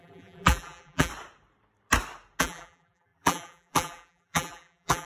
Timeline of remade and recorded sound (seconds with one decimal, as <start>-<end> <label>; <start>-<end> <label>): 0.0-1.1 remade; 1.1-2.4 recorded; 2.4-5.0 remade